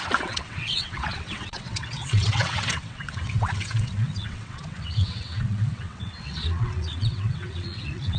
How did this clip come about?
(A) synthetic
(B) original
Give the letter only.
A